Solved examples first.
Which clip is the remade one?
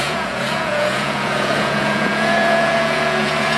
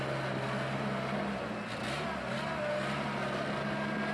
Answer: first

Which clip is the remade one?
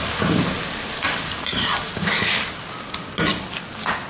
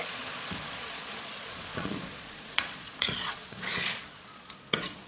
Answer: second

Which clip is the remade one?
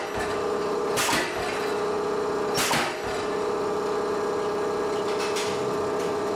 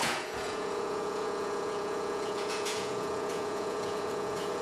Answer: second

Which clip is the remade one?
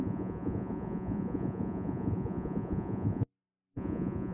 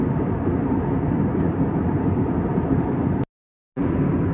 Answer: first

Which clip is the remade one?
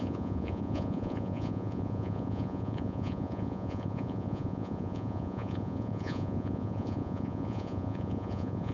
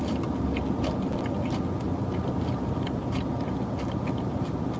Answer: first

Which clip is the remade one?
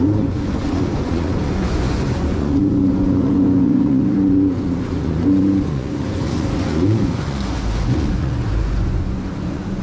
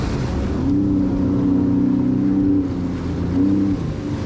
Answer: first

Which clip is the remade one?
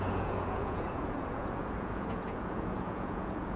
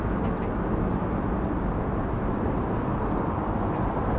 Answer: first